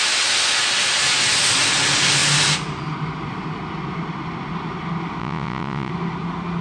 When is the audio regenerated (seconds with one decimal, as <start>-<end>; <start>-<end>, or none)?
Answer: 5.2-5.9